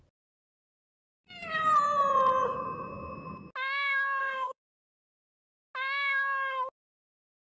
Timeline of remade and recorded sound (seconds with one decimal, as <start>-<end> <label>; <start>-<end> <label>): 0.0-4.2 recorded; 4.2-4.8 remade; 4.8-7.5 recorded